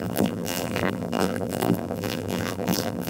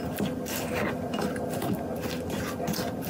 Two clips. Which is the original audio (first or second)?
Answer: second